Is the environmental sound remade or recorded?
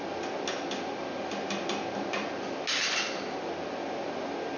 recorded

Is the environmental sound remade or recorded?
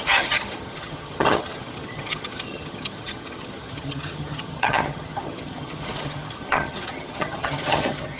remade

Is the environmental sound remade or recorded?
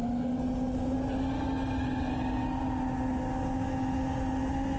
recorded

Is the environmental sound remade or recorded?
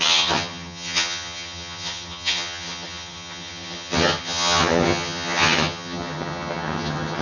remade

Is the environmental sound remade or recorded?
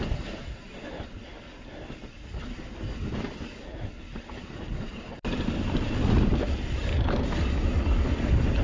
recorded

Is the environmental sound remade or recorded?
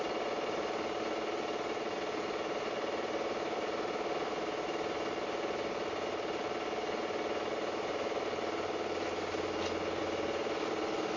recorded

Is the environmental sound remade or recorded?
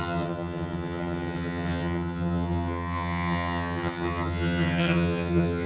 remade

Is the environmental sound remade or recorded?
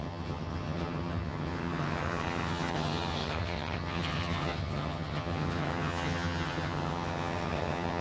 remade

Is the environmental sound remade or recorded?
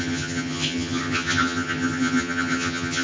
remade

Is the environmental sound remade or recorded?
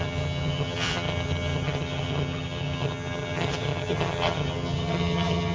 remade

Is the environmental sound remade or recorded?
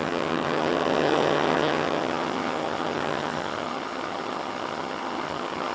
remade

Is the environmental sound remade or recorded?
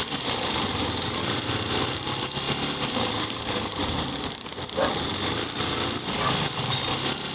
recorded